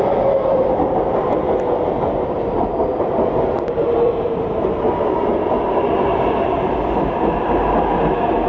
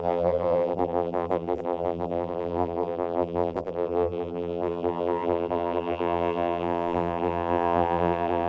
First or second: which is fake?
second